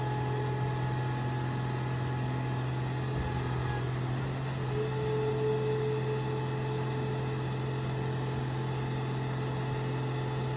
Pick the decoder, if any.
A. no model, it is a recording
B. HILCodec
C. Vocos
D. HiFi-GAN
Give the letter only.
A